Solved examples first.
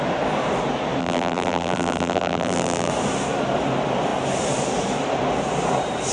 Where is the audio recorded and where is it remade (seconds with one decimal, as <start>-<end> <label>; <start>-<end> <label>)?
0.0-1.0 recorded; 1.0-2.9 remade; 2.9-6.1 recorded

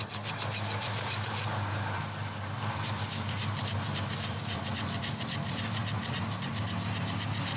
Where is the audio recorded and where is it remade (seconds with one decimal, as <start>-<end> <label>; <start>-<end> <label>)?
0.0-4.6 remade; 4.6-7.6 recorded

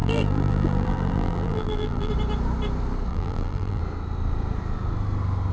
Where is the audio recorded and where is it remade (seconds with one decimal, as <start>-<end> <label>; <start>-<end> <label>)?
0.0-2.1 remade; 2.1-3.1 recorded; 3.1-3.8 remade; 3.8-5.5 recorded